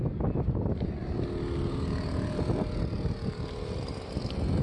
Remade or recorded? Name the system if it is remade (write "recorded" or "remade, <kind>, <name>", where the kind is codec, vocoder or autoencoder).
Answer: recorded